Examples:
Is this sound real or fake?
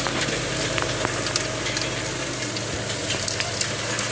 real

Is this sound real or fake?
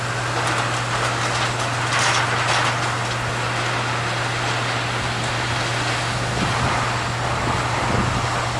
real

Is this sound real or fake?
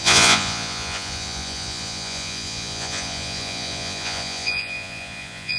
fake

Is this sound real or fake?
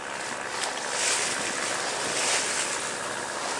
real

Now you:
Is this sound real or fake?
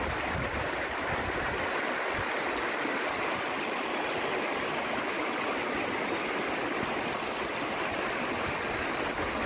real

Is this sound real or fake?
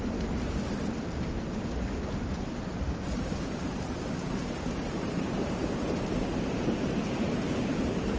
fake